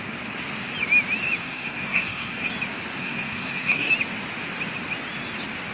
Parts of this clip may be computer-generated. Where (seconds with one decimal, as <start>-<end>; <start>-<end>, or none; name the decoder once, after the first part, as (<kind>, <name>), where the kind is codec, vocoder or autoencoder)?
1.4-2.5 (codec, SNAC); 3.0-3.9